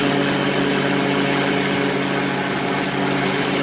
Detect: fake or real real